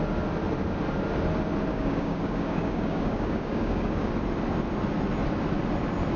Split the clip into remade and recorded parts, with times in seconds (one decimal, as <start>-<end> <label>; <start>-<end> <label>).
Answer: 0.0-1.7 recorded; 1.7-4.1 remade; 4.1-6.2 recorded